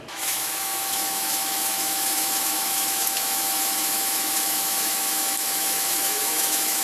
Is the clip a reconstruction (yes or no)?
yes